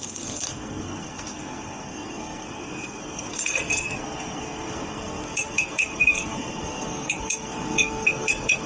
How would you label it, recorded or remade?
remade